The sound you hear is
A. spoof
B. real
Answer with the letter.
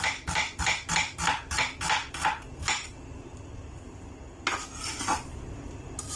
A